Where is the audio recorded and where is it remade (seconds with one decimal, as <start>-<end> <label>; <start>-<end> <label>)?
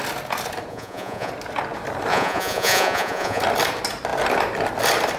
0.0-0.7 recorded; 0.7-1.3 remade; 1.3-2.1 recorded; 2.1-3.4 remade; 3.4-5.2 recorded